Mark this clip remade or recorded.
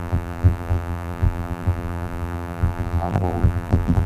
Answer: remade